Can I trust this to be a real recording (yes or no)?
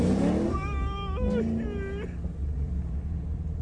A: yes